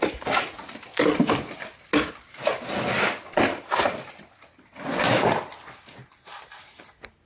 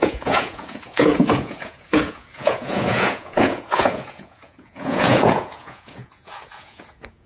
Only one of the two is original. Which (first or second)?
first